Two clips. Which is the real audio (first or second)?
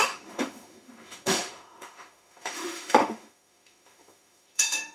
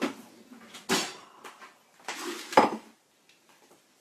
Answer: second